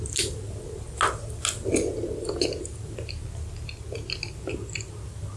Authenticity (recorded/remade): recorded